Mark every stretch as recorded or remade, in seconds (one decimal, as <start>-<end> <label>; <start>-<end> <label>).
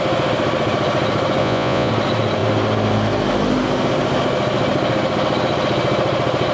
0.0-1.4 recorded; 1.4-1.9 remade; 1.9-6.5 recorded